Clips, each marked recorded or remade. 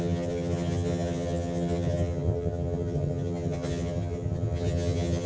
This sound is remade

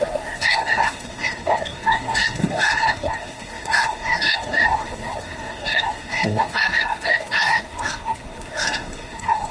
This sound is remade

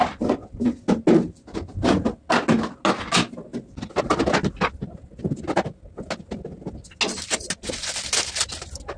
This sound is recorded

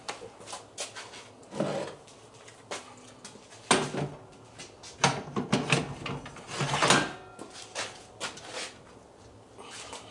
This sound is recorded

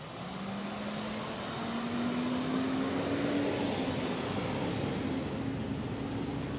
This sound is recorded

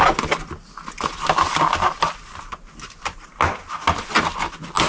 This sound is recorded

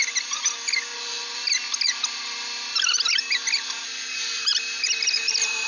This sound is recorded